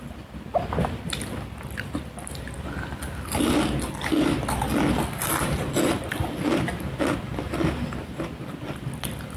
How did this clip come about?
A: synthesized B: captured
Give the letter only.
B